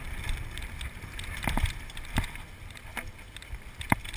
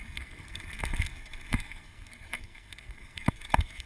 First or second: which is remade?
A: second